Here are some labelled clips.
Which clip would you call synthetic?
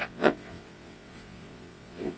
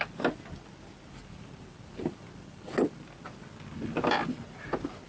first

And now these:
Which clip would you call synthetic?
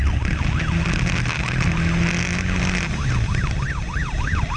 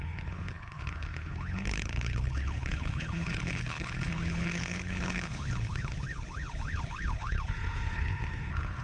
second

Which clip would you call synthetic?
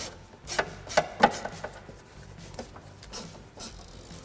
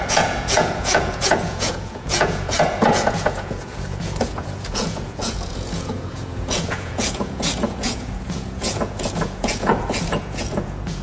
second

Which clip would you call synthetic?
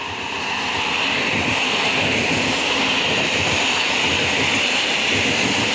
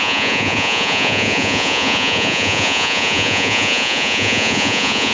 second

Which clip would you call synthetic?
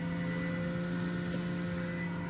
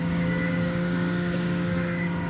second